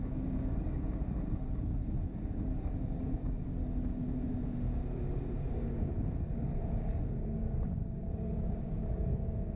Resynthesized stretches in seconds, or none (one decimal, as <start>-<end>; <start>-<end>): 0.0-4.8; 5.5-9.6